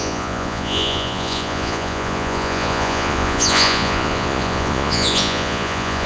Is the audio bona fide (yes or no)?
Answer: no